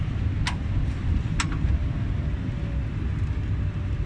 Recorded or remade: recorded